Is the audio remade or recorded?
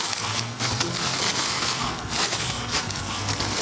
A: remade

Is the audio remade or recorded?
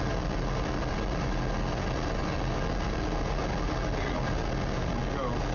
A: recorded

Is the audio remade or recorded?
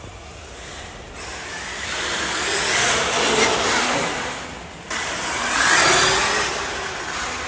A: recorded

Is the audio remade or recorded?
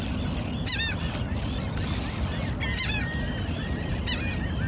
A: recorded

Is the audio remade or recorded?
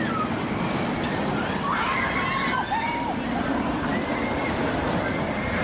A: recorded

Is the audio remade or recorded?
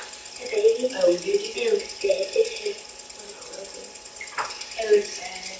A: recorded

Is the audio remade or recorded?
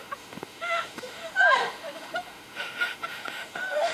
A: remade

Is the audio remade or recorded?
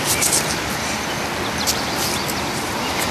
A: recorded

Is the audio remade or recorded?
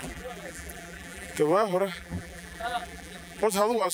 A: remade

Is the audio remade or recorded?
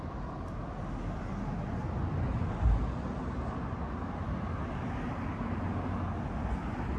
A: recorded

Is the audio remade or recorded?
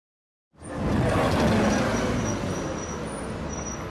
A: recorded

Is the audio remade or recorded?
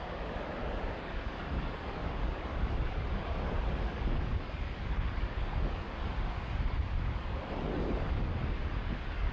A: remade